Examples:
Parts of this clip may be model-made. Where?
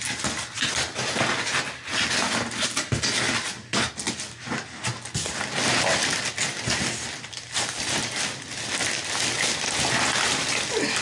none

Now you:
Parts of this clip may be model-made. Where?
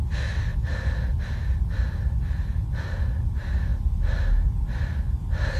none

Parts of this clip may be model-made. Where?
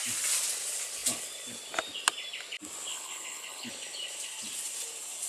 2.9-3.7 (codec, HILCodec)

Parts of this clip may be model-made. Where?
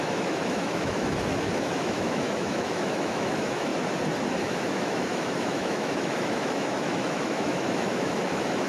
0.0-3.7 (autoencoder, DAC-VAE); 4.3-8.7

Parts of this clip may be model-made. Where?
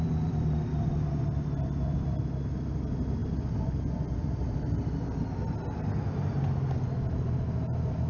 3.2-4.8 (vocoder, BigVGAN v2)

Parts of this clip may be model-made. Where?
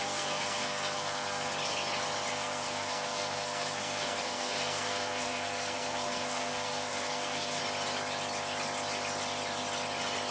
0.0-1.5 (codec, SNAC); 2.3-7.6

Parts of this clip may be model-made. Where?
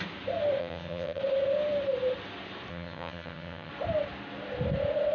0.6-1.2 (vocoder, HiFi-GAN); 2.7-3.7